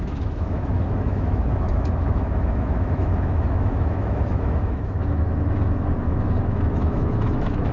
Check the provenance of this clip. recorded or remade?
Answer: remade